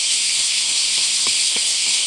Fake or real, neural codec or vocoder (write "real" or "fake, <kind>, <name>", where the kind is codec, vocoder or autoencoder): fake, codec, SNAC